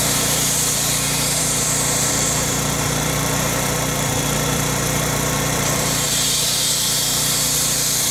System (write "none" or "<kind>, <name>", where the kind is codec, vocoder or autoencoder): vocoder, BigVGAN v2